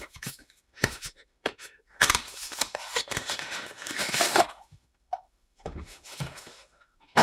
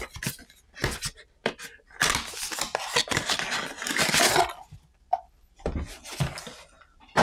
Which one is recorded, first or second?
second